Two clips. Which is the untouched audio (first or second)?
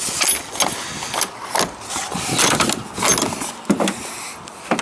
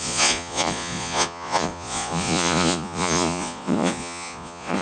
first